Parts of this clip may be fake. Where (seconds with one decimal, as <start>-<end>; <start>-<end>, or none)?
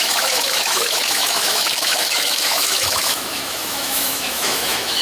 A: 0.0-5.0